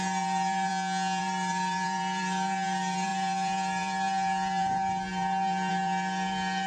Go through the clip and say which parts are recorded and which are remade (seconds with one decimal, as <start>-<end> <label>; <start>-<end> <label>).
0.0-0.7 remade; 0.7-1.2 recorded; 1.2-6.7 remade